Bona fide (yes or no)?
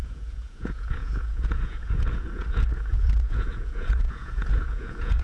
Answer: no